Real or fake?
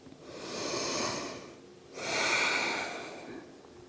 real